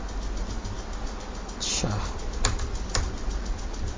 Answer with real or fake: real